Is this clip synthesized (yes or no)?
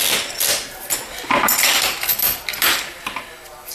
no